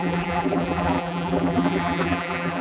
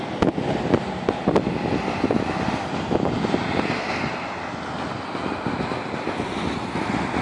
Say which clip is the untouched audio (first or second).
second